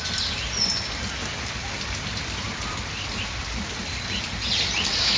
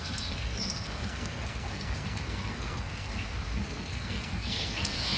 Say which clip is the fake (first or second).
second